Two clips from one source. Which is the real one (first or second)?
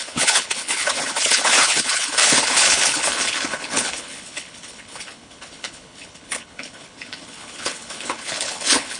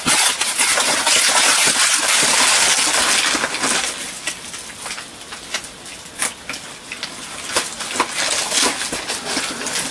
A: second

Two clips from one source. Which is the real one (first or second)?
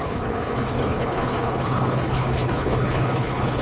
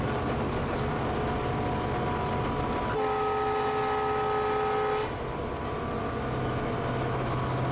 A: second